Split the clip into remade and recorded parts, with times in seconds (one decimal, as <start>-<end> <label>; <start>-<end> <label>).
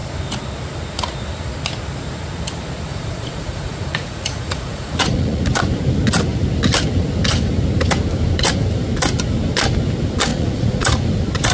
0.0-2.9 recorded; 2.9-5.4 remade; 5.4-10.3 recorded; 10.3-11.0 remade; 11.0-11.5 recorded